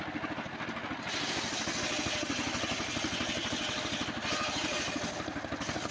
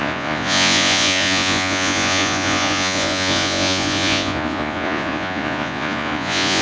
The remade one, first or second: second